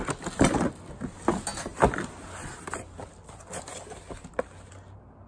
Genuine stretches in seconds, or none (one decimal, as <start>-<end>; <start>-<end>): 0.0-5.3